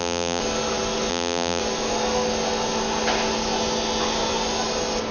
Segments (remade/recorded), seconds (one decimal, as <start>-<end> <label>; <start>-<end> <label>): 0.0-0.4 remade; 0.4-1.1 recorded; 1.1-1.6 remade; 1.6-5.1 recorded